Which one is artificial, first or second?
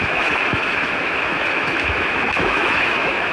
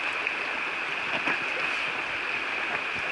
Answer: first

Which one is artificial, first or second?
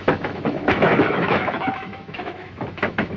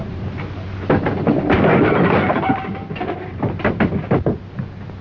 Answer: first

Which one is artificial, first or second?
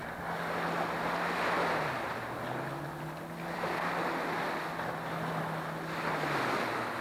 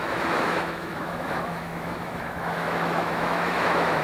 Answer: second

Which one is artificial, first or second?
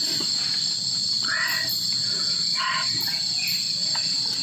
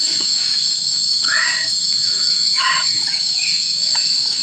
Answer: second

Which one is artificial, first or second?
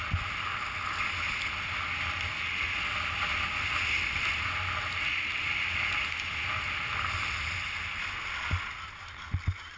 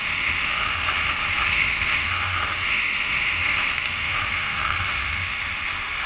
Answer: second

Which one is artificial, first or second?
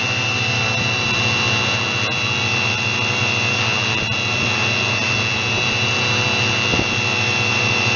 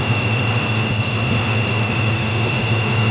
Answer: second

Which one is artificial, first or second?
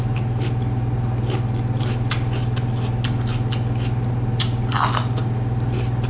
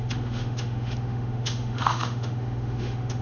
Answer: second